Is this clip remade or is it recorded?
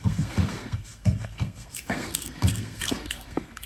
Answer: remade